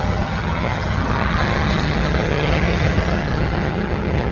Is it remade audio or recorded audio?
remade